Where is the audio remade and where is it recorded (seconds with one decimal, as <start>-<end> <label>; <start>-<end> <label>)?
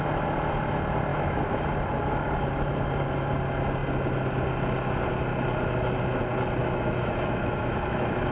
0.0-1.1 recorded; 1.1-1.7 remade; 1.7-6.6 recorded; 6.6-8.3 remade